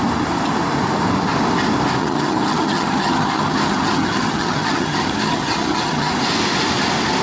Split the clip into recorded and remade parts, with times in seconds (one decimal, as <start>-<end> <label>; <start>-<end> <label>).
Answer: 0.0-2.0 recorded; 2.0-6.1 remade; 6.1-7.2 recorded